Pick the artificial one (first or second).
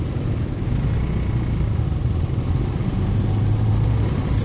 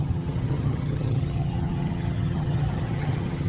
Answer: second